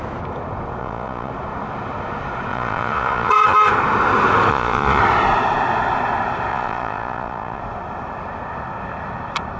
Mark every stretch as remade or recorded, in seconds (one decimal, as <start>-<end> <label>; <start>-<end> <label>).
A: 0.0-0.8 recorded; 0.8-1.3 remade; 1.3-2.5 recorded; 2.5-3.7 remade; 3.7-4.5 recorded; 4.5-5.0 remade; 5.0-6.5 recorded; 6.5-7.6 remade; 7.6-9.6 recorded